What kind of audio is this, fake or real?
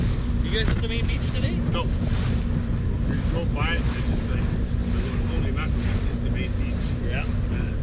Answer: real